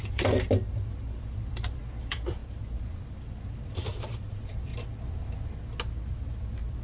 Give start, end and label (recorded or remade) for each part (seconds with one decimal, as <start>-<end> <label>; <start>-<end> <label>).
0.0-2.4 remade; 2.4-3.0 recorded; 3.0-4.7 remade; 4.7-6.8 recorded